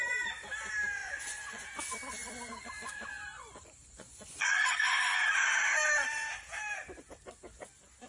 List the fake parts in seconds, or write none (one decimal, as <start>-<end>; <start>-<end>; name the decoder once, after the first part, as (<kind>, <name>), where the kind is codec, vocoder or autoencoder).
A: 1.0-1.6 (vocoder, Vocos); 2.2-5.3